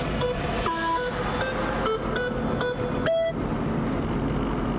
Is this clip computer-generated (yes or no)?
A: no